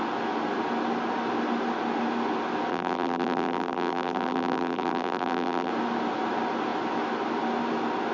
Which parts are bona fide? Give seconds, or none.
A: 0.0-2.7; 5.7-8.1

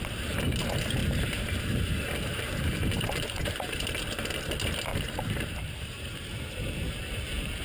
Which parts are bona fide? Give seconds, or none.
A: 0.0-1.0; 3.8-4.9; 7.1-7.6

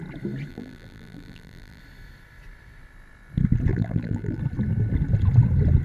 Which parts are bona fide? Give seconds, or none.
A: 0.0-0.5; 1.8-3.7; 4.4-5.8

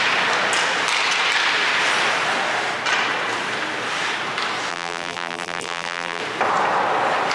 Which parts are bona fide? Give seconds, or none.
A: 0.0-4.7; 6.2-7.3

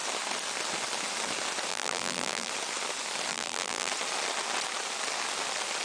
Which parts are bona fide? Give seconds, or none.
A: 0.0-1.7; 2.5-3.3; 3.9-5.8